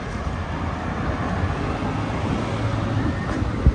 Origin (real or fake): real